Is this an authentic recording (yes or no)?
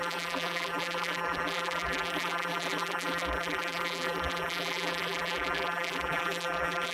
no